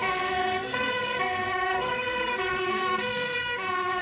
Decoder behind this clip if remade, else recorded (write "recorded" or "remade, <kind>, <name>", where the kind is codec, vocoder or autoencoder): remade, codec, SNAC